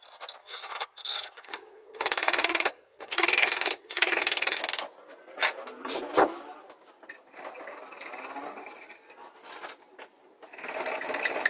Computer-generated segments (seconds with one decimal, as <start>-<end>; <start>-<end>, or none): 0.4-4.6

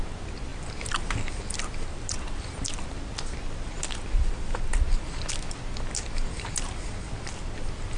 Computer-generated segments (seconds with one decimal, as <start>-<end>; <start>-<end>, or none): none

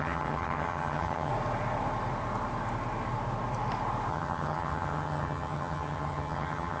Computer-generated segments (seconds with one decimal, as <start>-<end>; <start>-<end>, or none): 0.0-1.3; 4.1-6.8

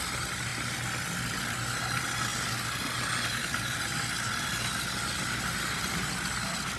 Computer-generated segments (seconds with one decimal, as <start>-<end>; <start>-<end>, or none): none

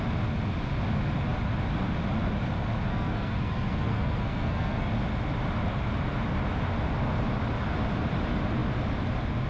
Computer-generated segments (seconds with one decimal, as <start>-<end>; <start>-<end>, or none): 2.9-4.9